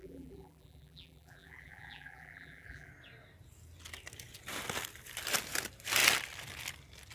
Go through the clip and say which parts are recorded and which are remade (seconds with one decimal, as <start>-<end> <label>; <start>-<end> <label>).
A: 0.0-2.9 remade; 2.9-7.1 recorded